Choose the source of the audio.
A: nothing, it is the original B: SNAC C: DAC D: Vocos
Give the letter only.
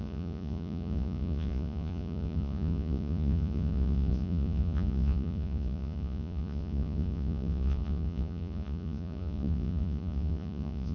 D